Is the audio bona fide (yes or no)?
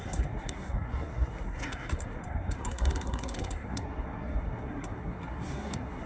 no